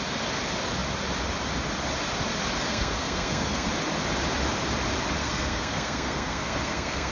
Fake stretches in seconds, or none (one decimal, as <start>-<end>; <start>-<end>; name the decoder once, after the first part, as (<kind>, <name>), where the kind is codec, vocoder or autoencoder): 2.7-3.7 (codec, SNAC); 5.2-7.1

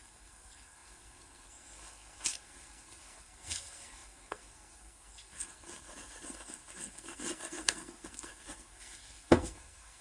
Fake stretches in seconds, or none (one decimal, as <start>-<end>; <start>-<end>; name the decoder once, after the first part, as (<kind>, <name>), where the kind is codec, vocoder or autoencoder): 0.0-10.0 (codec, SNAC)